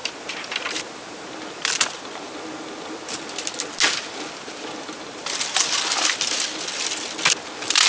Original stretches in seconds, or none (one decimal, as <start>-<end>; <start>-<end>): 0.0-7.9